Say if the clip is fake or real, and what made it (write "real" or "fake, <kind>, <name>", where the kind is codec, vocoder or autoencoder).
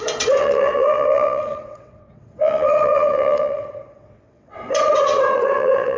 fake, vocoder, WaveNeXt